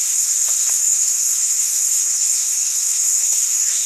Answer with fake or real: fake